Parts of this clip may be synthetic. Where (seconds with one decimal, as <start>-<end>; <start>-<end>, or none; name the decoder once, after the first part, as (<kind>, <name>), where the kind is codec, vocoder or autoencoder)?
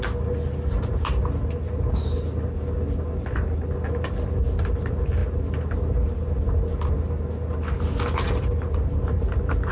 none